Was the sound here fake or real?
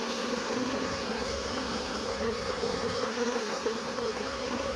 fake